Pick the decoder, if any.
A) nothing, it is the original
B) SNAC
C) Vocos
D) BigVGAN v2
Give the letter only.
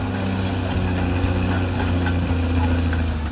A